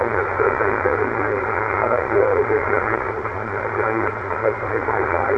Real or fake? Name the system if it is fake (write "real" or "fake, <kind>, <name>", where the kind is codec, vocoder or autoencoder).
fake, vocoder, Vocos